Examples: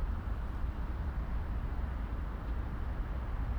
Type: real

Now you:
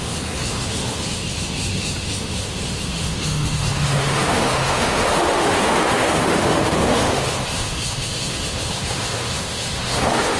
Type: fake